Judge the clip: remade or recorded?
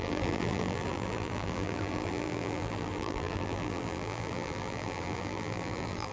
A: remade